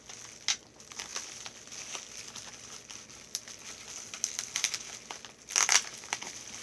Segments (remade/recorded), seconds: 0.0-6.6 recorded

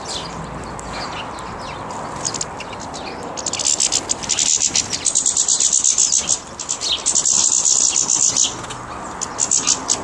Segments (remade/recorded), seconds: 0.0-10.0 recorded

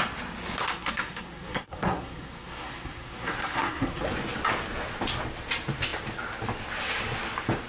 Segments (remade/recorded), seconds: 0.0-0.6 recorded; 0.6-4.0 remade; 4.0-7.7 recorded

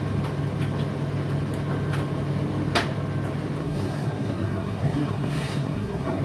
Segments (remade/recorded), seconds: 0.0-3.6 recorded; 3.6-6.2 remade